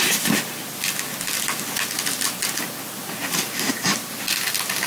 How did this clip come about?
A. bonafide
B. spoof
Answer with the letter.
A